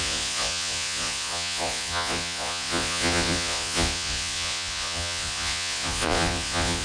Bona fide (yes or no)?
no